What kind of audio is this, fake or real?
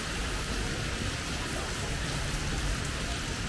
fake